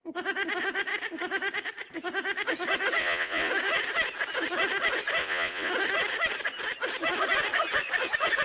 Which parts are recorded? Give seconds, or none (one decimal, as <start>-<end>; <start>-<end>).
0.0-3.0; 3.5-5.2; 5.7-8.4